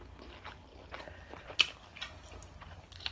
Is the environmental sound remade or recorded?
recorded